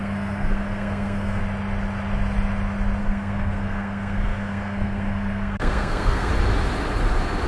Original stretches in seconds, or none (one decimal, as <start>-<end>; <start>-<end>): 1.4-3.0; 6.3-7.5